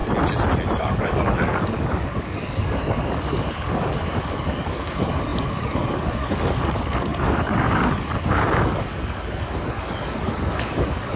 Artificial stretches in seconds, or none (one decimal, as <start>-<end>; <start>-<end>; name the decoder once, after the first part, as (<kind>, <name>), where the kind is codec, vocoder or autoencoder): 0.8-11.2 (codec, DAC)